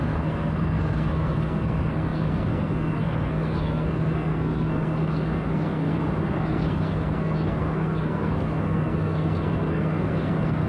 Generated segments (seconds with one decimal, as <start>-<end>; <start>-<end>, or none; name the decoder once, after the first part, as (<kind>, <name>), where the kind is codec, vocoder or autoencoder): 0.0-10.7 (codec, SNAC)